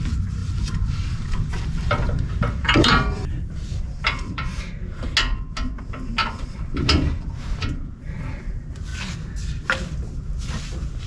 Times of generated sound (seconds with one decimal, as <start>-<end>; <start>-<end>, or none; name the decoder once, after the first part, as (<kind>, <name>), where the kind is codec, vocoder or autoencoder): 0.4-4.6 (vocoder, BigVGAN v2); 6.2-7.3